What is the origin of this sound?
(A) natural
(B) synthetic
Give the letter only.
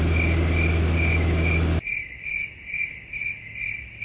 A